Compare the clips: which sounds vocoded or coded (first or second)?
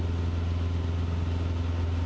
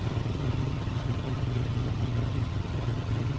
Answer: second